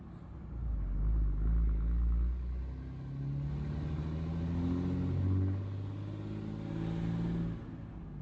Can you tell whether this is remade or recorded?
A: recorded